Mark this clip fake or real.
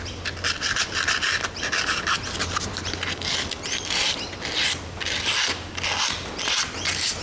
real